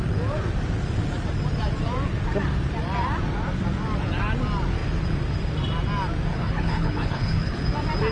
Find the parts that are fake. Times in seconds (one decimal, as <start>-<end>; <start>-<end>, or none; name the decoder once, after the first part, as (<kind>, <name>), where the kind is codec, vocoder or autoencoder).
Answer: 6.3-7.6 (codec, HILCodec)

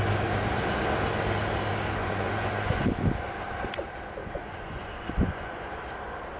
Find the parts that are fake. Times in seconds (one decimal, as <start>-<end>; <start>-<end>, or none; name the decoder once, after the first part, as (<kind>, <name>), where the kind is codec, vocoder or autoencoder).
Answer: 2.0-2.9 (vocoder, Vocos); 4.2-5.9

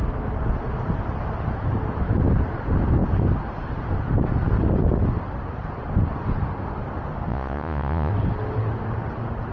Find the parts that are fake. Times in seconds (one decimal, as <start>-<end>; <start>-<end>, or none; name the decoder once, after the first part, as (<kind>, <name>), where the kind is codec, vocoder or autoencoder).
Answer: 7.3-8.1 (vocoder, Vocos)